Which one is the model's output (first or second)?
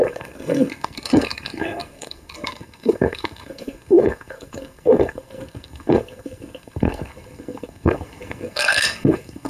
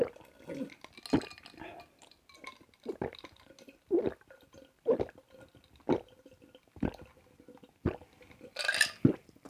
first